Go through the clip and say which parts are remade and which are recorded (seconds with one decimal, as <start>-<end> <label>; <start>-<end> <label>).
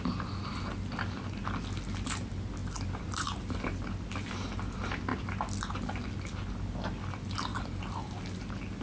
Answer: 0.0-2.6 recorded; 2.6-3.9 remade; 3.9-8.8 recorded